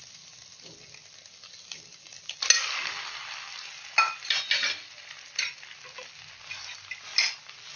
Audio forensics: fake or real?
real